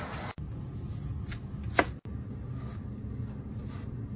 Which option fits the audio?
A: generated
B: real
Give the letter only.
B